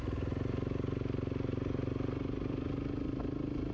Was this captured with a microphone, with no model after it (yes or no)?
yes